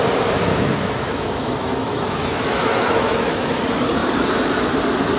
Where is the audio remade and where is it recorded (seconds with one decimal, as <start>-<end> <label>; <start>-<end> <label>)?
0.0-0.5 recorded; 0.5-3.6 remade; 3.6-5.2 recorded